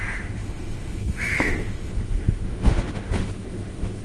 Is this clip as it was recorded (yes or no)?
no